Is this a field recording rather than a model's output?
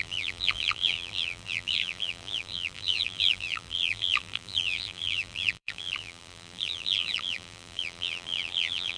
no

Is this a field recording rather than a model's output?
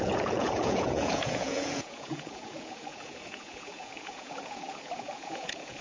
no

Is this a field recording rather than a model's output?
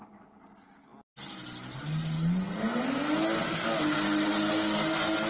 yes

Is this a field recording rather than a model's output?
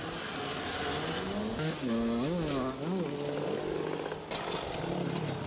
yes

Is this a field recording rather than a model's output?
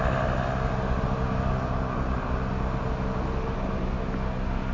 yes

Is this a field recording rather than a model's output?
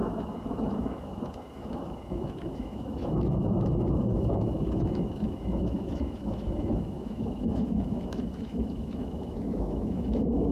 no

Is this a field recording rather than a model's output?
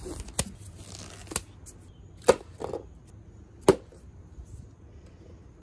yes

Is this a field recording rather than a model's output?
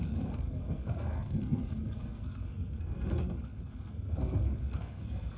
no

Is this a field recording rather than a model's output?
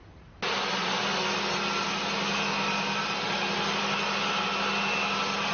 yes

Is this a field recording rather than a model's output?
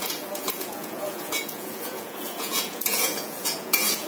no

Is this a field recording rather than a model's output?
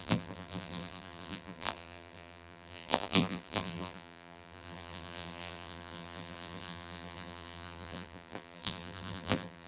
no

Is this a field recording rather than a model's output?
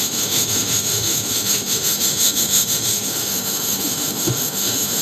no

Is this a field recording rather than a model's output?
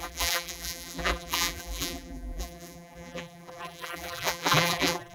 no